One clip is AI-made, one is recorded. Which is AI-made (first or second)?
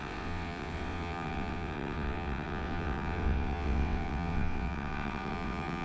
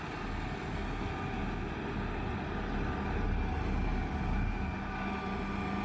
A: first